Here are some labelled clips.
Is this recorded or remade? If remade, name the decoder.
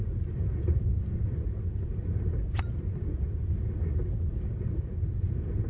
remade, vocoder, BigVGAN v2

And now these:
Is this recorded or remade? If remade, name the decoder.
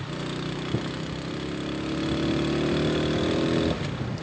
remade, vocoder, BigVGAN v2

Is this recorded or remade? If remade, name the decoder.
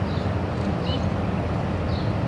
recorded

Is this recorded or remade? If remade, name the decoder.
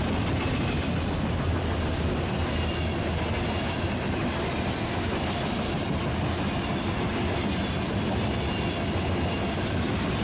recorded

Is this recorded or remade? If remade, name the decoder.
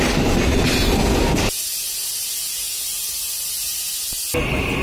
recorded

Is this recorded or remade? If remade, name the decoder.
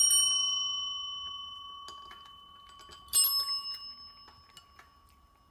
recorded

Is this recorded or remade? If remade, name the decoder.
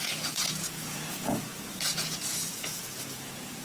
remade, vocoder, Vocos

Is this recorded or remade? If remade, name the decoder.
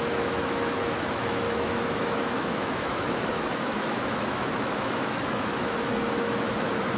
remade, autoencoder, DAC-VAE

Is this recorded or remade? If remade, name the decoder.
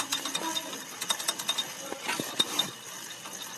recorded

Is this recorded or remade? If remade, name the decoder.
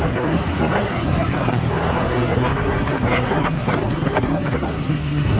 remade, codec, SNAC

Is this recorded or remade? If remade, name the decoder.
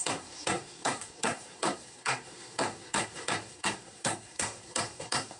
remade, codec, SNAC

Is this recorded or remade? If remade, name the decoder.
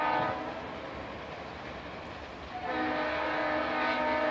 recorded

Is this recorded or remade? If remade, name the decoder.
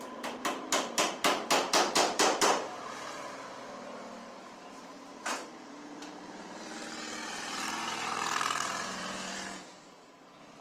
remade, vocoder, BigVGAN v2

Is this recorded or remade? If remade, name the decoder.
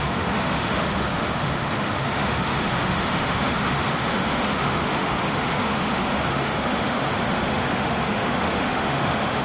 remade, autoencoder, DAC-VAE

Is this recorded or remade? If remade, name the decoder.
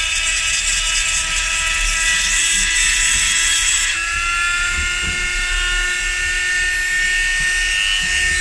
recorded